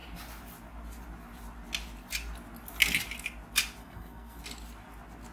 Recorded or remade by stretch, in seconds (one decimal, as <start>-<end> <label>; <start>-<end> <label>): 0.0-3.8 recorded; 3.8-4.4 remade; 4.4-5.3 recorded